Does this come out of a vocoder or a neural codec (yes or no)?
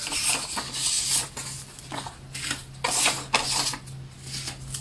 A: no